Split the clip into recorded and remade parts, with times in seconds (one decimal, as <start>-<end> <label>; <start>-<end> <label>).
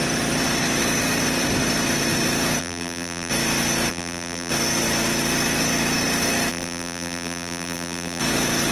0.0-2.6 recorded; 2.6-3.3 remade; 3.3-3.9 recorded; 3.9-4.5 remade; 4.5-6.5 recorded; 6.5-8.2 remade; 8.2-8.7 recorded